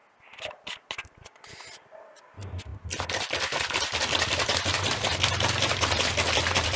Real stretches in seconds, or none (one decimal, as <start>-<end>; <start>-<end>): none